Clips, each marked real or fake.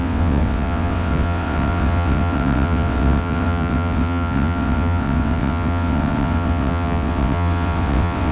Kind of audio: fake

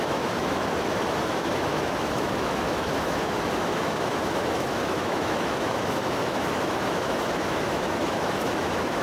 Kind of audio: fake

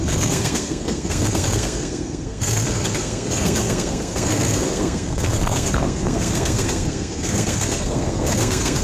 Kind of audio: fake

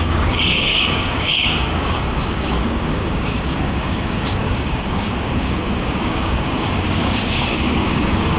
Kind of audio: fake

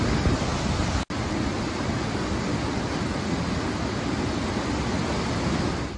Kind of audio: real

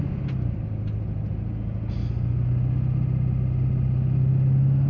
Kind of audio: real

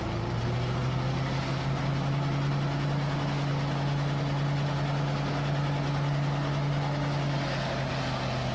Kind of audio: real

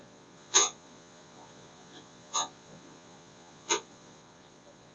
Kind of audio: fake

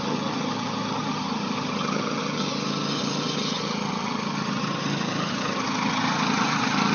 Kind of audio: fake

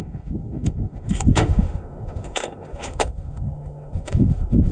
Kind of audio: fake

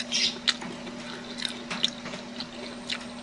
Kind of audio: real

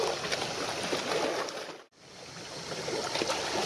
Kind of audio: real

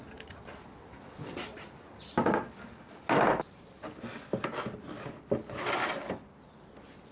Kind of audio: real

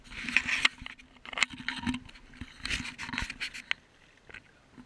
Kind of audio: real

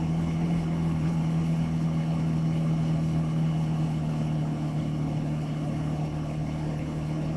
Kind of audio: fake